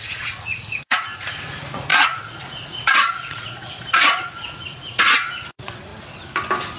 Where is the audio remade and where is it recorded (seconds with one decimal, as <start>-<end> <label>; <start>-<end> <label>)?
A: 0.0-5.9 remade; 5.9-6.8 recorded